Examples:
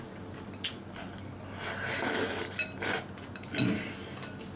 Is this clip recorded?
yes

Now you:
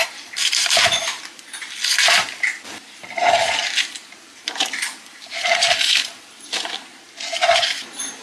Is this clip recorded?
no